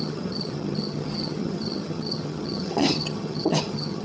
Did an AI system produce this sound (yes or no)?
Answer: yes